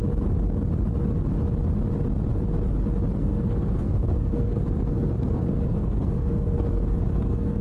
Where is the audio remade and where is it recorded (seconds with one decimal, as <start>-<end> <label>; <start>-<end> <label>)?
0.0-3.2 recorded; 3.2-7.6 remade